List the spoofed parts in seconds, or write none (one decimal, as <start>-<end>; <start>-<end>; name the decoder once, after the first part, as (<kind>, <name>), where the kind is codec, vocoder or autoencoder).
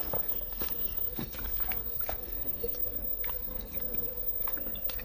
0.0-5.0 (codec, SNAC)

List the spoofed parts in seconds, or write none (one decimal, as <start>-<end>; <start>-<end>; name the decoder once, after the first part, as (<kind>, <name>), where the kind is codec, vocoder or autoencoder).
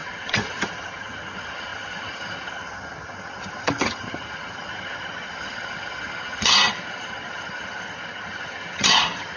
0.0-9.4 (vocoder, HiFi-GAN)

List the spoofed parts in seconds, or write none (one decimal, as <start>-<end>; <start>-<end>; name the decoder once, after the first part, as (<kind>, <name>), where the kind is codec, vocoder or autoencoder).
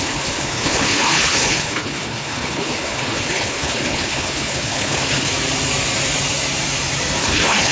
0.0-5.3 (codec, HILCodec); 7.2-7.7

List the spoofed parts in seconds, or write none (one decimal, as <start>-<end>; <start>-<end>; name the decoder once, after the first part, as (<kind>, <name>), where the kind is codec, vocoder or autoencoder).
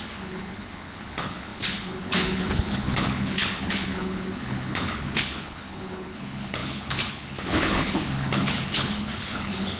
0.0-9.8 (codec, HILCodec)